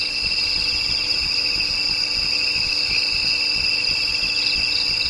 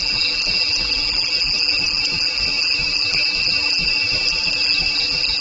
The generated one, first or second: second